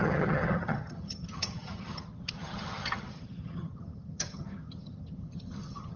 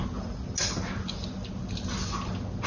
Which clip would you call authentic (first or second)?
second